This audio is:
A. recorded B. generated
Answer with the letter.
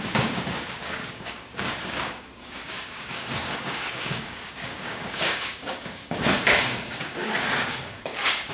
B